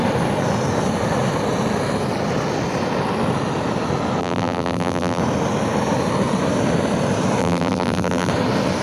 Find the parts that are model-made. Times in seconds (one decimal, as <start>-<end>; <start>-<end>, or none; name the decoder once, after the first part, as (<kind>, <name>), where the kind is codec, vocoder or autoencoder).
4.2-5.2 (vocoder, BigVGAN v2); 7.4-8.3